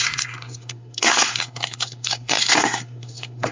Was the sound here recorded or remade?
remade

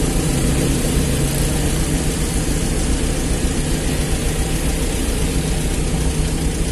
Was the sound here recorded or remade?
recorded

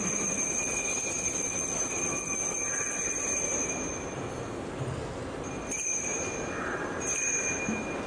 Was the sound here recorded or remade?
recorded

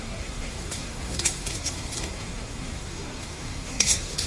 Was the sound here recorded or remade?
remade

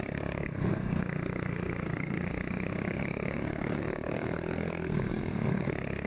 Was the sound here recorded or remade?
remade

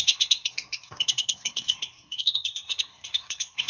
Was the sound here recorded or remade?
remade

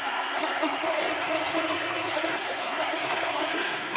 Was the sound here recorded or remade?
remade